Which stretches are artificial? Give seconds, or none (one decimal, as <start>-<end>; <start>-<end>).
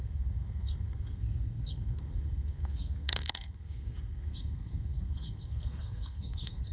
0.0-6.7